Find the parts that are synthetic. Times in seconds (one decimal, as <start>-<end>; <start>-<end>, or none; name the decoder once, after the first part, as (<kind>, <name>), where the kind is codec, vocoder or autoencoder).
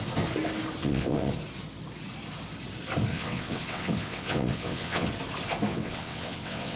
0.8-1.3 (vocoder, WaveNeXt); 3.1-5.1; 5.7-6.8